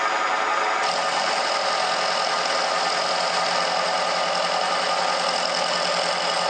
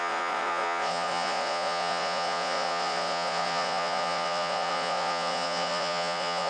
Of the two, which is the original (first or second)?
first